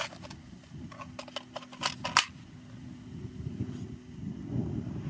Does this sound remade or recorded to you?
recorded